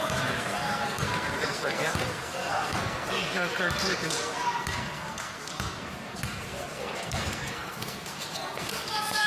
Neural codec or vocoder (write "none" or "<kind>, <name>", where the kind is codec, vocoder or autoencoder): codec, SNAC